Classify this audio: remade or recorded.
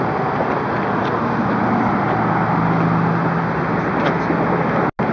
recorded